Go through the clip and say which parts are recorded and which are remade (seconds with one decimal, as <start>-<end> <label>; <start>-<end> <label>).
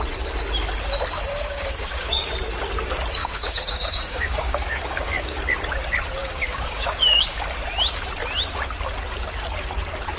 0.0-1.3 recorded; 1.3-2.3 remade; 2.3-3.2 recorded; 3.2-5.4 remade; 5.4-6.2 recorded; 6.2-7.5 remade; 7.5-10.2 recorded